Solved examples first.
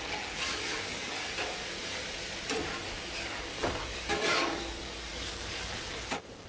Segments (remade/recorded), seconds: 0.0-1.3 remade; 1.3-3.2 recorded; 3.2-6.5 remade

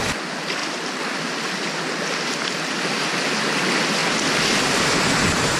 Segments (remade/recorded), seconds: 0.0-5.6 recorded